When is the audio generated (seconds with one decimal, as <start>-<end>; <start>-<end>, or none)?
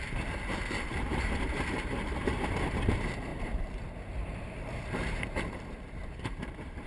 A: 0.0-6.9